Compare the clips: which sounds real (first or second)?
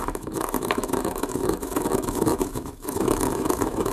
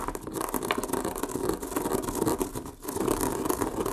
second